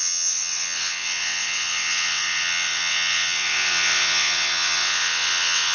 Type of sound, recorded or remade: remade